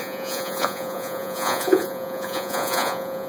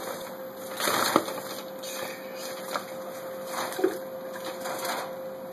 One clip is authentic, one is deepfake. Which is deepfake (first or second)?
first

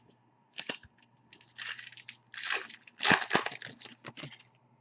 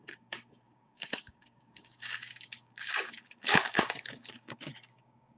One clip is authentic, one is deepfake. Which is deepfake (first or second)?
second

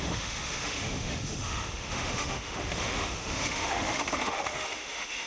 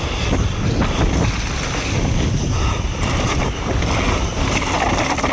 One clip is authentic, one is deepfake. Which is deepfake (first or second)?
first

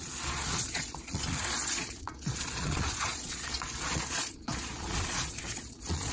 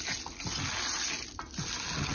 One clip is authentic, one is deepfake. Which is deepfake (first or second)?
first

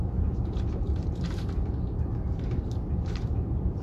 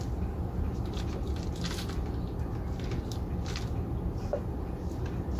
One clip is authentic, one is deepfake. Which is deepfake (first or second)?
first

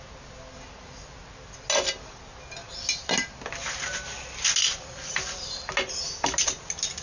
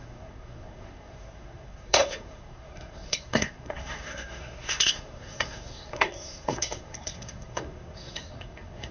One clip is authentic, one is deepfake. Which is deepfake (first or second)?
second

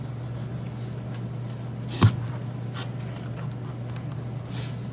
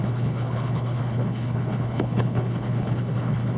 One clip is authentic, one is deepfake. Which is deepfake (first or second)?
second